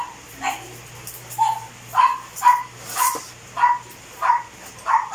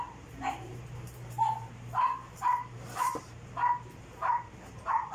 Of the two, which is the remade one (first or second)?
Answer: second